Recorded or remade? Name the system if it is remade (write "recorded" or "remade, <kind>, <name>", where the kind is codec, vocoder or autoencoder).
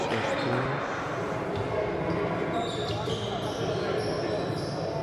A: recorded